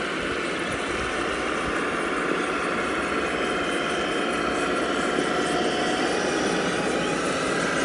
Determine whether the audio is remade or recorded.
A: recorded